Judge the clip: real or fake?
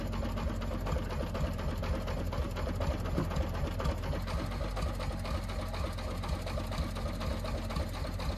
real